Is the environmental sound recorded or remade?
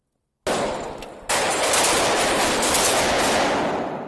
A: recorded